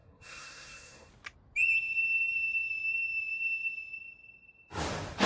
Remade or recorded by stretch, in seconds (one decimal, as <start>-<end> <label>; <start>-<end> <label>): 0.0-1.1 remade; 1.1-5.3 recorded